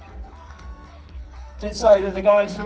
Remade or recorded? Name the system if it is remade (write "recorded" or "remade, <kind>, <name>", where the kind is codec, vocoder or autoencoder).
remade, codec, SNAC